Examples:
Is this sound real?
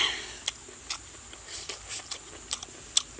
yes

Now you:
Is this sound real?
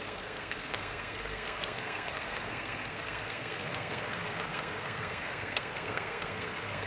no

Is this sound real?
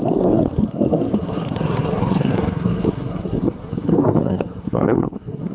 no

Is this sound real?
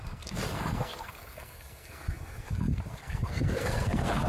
no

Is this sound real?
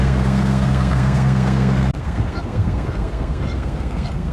no